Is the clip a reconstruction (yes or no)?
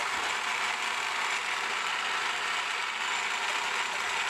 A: no